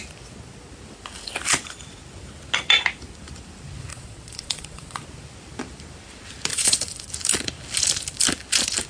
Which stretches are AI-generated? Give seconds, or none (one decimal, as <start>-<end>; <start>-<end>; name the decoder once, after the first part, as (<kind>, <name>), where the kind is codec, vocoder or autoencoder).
3.9-5.0 (vocoder, Vocos); 6.5-7.1